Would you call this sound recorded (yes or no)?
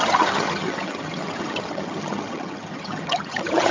no